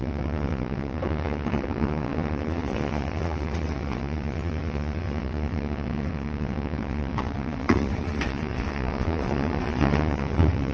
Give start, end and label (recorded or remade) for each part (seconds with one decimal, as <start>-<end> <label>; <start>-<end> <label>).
0.0-10.7 remade